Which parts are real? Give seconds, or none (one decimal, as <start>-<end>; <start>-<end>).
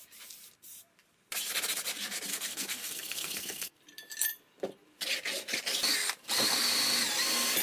0.0-2.3; 3.8-7.6